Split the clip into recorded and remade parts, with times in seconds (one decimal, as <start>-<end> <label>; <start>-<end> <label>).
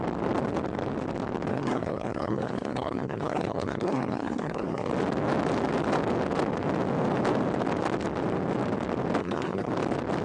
0.0-1.5 recorded; 1.5-4.9 remade; 4.9-9.2 recorded; 9.2-9.7 remade; 9.7-10.2 recorded